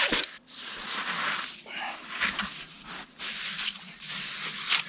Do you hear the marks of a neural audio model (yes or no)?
no